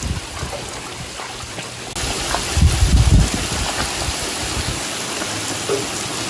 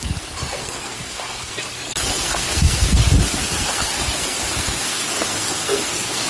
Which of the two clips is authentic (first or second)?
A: first